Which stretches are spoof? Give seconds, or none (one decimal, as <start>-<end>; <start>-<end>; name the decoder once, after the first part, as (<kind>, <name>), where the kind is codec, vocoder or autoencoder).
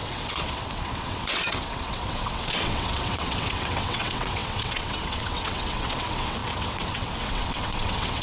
0.0-8.2 (vocoder, WaveNeXt)